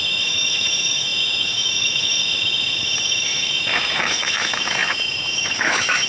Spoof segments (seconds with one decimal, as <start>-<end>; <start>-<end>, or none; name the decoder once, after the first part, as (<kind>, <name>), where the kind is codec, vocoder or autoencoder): 0.0-6.1 (autoencoder, DAC-VAE)